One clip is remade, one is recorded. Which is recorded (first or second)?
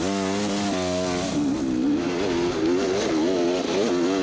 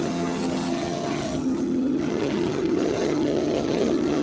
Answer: first